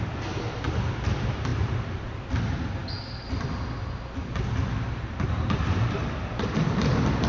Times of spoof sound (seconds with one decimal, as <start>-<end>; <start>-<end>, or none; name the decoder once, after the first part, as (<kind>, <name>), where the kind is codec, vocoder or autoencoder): 1.5-2.4 (vocoder, BigVGAN v2)

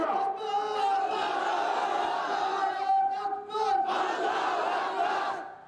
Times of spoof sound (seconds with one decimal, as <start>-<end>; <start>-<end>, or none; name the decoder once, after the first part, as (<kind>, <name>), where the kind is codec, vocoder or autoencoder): 1.2-4.6 (vocoder, BigVGAN v2)